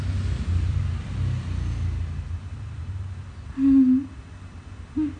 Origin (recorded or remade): recorded